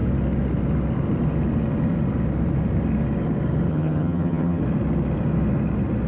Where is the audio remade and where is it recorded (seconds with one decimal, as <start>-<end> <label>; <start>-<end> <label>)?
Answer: 0.0-3.7 recorded; 3.7-4.6 remade; 4.6-6.1 recorded